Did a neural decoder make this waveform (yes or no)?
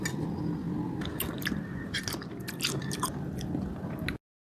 no